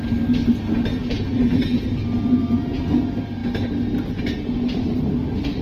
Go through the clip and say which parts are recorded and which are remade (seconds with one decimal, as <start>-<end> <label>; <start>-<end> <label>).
0.0-0.9 recorded; 0.9-1.8 remade; 1.8-2.4 recorded; 2.4-3.0 remade; 3.0-5.6 recorded